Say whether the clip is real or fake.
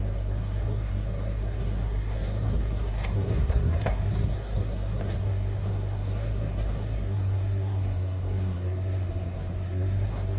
fake